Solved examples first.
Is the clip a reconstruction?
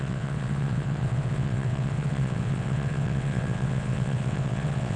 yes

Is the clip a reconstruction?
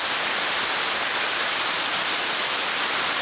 no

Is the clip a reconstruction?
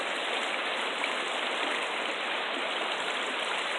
no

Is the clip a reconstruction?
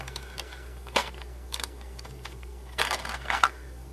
yes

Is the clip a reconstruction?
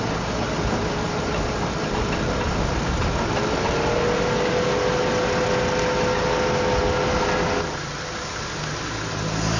no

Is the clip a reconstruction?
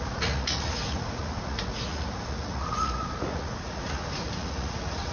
yes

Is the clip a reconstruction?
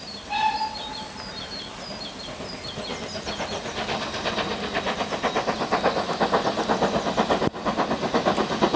no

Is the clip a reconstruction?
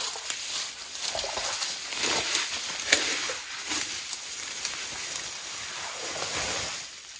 no